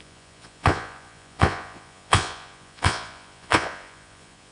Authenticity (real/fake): fake